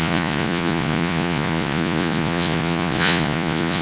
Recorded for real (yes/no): no